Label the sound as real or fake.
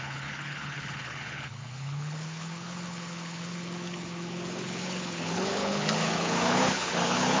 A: fake